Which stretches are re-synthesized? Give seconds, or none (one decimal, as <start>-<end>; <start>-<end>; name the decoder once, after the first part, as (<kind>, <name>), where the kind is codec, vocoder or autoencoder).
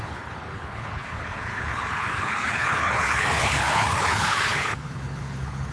0.0-5.7 (codec, HILCodec)